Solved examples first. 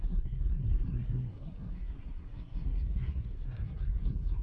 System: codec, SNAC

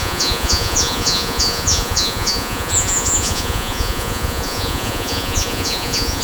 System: vocoder, Vocos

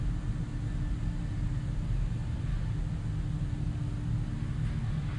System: none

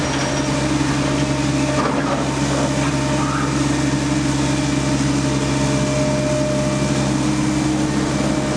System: none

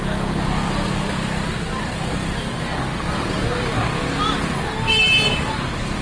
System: none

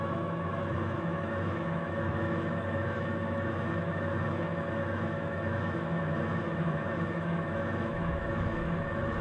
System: autoencoder, DAC-VAE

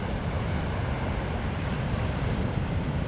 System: none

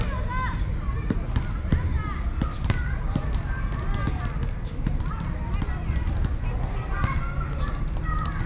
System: none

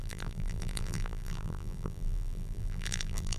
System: vocoder, BigVGAN v2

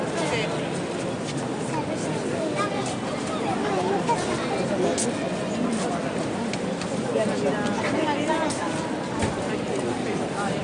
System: none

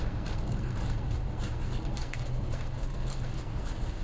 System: codec, SNAC